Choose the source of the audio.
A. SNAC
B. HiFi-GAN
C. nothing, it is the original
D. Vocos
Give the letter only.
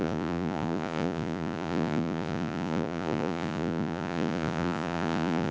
D